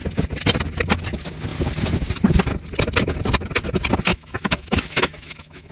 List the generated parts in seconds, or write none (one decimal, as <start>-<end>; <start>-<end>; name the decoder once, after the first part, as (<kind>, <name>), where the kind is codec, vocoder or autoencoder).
4.1-5.7 (autoencoder, DAC-VAE)